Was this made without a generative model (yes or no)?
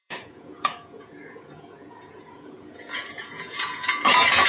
no